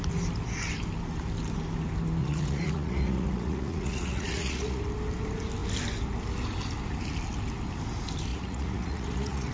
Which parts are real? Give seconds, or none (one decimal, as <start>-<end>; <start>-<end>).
0.0-2.2; 4.8-8.3